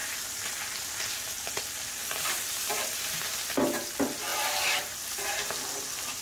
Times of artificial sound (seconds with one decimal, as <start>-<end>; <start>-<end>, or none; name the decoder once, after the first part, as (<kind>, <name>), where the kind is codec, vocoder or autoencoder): 0.0-3.0 (vocoder, BigVGAN v2)